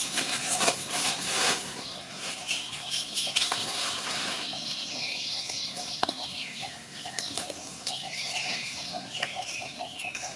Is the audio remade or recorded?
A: remade